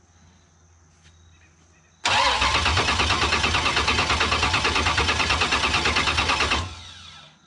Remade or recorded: recorded